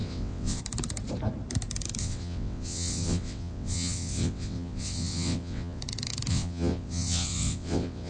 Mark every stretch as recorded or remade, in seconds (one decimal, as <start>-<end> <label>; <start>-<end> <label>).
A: 0.0-0.6 remade; 0.6-2.0 recorded; 2.0-5.8 remade; 5.8-6.3 recorded; 6.3-8.1 remade